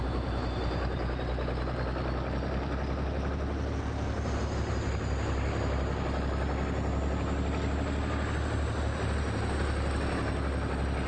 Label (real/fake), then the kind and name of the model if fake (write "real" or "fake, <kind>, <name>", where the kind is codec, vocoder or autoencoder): real